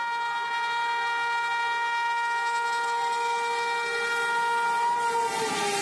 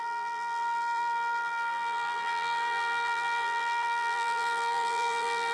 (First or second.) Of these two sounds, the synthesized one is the second